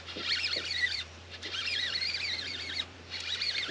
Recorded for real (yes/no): no